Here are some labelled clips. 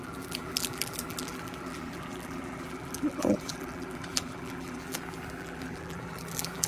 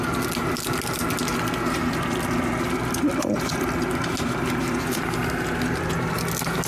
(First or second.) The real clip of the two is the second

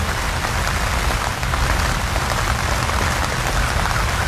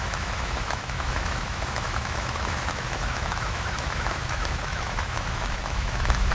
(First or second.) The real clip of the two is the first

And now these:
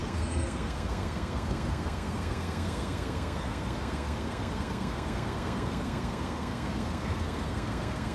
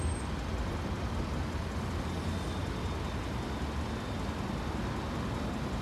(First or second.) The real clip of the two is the second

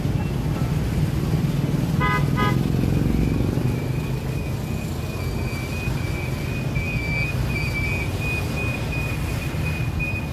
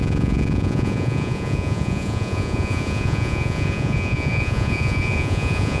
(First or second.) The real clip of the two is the first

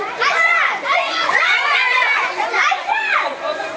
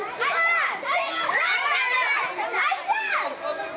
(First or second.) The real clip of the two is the second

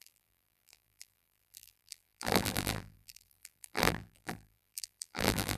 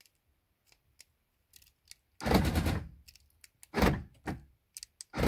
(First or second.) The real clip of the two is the second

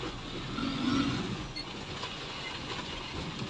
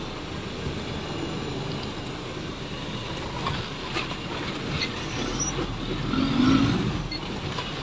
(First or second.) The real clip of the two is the second